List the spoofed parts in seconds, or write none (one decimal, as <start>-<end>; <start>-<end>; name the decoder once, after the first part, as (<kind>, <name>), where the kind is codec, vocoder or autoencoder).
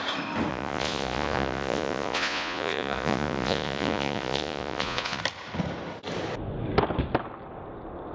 0.5-5.2 (vocoder, Vocos)